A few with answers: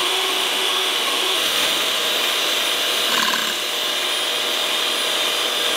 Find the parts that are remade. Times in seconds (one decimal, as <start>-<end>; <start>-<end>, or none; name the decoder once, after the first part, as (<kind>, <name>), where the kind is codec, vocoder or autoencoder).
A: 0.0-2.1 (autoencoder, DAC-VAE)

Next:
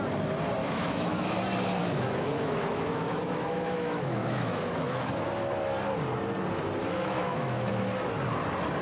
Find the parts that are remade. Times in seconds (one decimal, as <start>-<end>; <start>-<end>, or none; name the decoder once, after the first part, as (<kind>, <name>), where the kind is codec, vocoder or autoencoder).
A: 0.6-1.4 (autoencoder, DAC-VAE); 1.8-5.1; 6.8-7.7

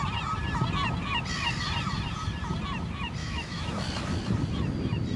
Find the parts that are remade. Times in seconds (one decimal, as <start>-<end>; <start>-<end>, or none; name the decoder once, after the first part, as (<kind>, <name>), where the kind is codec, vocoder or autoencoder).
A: 3.2-3.7 (autoencoder, DAC-VAE)

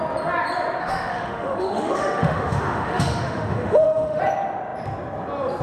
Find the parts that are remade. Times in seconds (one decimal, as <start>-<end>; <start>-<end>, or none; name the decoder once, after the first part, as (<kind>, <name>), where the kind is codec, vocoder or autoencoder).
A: 0.8-4.2 (autoencoder, DAC-VAE)

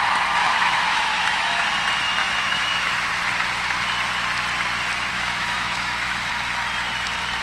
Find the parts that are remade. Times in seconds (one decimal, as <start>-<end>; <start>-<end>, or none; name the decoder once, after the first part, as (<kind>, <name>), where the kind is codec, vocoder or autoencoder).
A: 0.4-1.7 (autoencoder, DAC-VAE); 2.2-3.1; 5.1-6.3

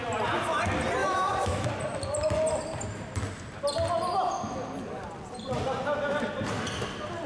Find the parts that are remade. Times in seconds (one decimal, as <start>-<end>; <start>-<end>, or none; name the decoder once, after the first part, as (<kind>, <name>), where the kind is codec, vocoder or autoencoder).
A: 1.0-1.7 (autoencoder, DAC-VAE)

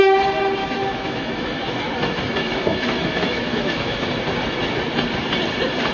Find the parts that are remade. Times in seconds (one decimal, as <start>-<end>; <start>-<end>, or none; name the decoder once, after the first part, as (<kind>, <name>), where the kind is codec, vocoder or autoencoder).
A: 0.6-4.1 (autoencoder, DAC-VAE)